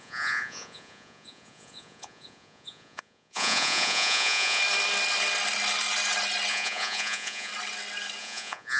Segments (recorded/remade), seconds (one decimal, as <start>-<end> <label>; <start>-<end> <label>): 0.0-4.6 remade; 4.6-6.5 recorded; 6.5-7.5 remade; 7.5-8.2 recorded; 8.2-8.8 remade